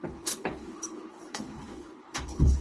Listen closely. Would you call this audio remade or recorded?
remade